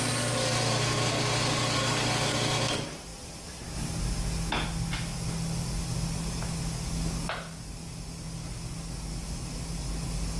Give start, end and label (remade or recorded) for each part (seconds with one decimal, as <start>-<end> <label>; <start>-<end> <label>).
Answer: 0.0-10.4 recorded